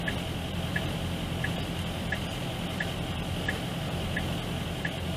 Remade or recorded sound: recorded